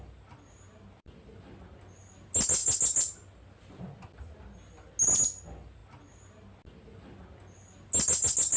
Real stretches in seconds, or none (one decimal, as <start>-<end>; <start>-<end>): 0.0-8.6

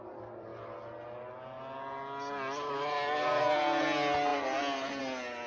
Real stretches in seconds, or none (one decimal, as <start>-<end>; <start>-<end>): 0.0-5.5

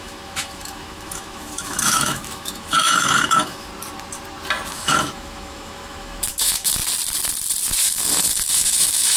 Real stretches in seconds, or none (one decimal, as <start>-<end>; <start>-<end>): 3.7-4.7; 6.8-7.8

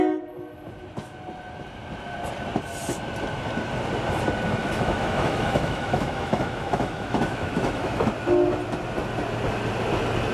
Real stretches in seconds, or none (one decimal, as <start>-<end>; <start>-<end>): 0.0-4.6; 8.1-10.3

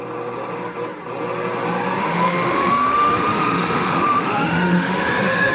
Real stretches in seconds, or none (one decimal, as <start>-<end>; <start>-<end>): 0.0-2.0